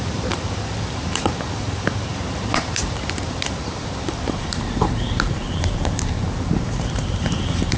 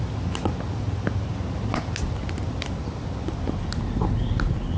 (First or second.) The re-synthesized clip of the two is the first